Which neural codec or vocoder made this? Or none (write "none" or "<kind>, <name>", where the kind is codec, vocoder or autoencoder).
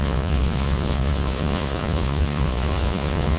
vocoder, Vocos